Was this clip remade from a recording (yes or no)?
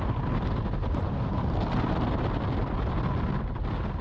no